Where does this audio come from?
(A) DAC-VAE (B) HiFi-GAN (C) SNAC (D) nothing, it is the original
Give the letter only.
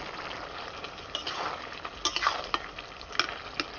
D